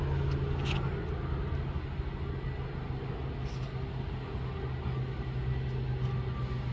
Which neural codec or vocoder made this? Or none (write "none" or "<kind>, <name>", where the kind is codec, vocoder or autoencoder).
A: none